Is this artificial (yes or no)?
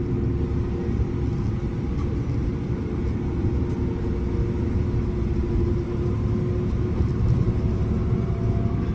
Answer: no